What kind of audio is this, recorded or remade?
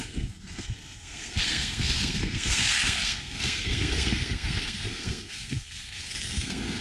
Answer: remade